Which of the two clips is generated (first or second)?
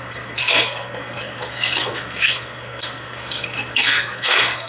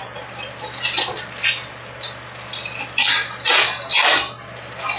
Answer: first